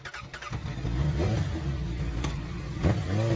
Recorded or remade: recorded